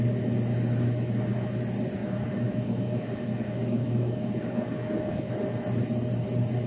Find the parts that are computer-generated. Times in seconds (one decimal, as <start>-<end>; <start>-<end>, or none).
2.0-5.3